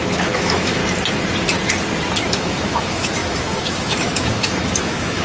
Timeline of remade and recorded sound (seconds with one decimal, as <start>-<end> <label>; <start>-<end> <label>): 0.0-0.8 remade; 0.8-2.3 recorded; 2.3-5.2 remade